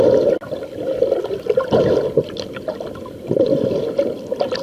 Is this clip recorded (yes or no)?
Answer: yes